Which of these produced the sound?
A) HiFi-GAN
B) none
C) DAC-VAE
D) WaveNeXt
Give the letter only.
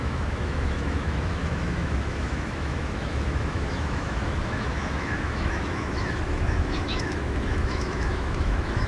C